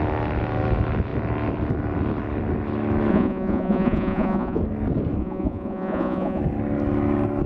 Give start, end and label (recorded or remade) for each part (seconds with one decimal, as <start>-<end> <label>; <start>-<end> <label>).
0.0-3.1 recorded; 3.1-4.6 remade; 4.6-5.2 recorded; 5.2-6.4 remade; 6.4-7.5 recorded